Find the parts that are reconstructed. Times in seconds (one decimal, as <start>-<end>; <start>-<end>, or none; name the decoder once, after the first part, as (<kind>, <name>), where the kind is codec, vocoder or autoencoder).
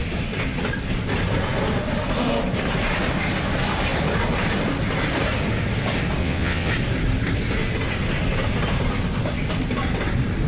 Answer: 6.2-6.7 (vocoder, WaveNeXt)